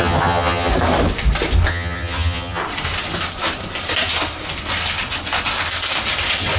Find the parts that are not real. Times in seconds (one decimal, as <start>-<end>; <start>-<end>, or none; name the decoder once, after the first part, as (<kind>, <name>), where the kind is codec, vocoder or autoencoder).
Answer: 0.0-0.7 (vocoder, HiFi-GAN); 1.7-2.6